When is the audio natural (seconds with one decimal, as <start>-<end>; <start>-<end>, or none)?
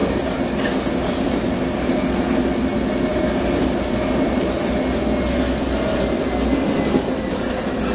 0.0-7.9